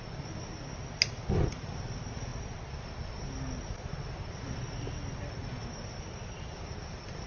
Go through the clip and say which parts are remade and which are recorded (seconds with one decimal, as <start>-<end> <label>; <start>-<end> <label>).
0.0-7.3 recorded